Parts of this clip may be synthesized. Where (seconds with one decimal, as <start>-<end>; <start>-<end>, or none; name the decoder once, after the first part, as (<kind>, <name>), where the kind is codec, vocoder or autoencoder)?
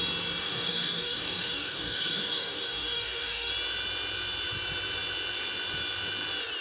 0.4-3.5 (codec, DAC)